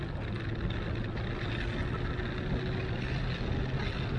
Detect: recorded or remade recorded